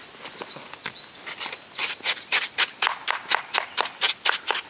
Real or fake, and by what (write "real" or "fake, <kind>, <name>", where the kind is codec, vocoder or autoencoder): real